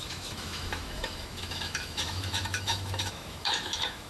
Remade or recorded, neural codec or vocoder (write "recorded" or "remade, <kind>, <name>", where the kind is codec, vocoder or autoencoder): remade, autoencoder, DAC-VAE